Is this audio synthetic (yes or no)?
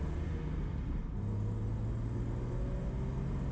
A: no